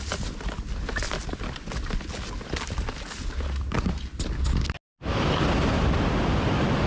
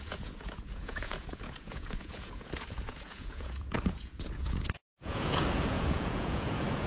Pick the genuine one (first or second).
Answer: first